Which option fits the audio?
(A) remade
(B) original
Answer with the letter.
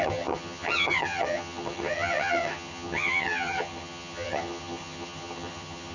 A